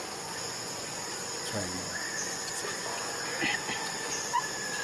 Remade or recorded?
remade